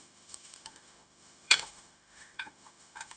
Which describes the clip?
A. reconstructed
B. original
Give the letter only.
A